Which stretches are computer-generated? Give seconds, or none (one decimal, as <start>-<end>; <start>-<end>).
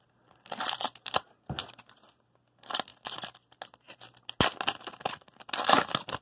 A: 0.0-2.9; 5.1-6.2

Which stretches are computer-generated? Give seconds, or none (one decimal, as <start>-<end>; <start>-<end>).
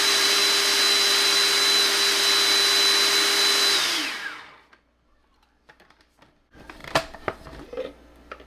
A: 0.0-0.4; 4.4-6.8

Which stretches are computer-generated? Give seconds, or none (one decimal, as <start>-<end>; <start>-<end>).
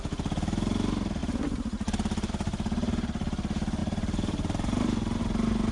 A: 1.2-2.3; 3.8-5.2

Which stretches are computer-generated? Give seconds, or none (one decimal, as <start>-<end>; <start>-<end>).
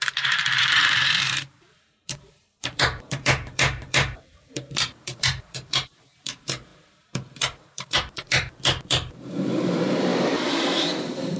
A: 0.0-10.1; 11.0-11.4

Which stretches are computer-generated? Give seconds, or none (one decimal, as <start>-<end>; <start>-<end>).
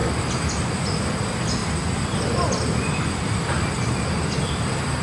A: 0.0-5.0